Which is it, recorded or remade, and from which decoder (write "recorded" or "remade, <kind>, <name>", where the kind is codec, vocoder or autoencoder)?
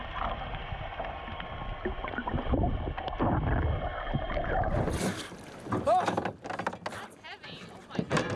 recorded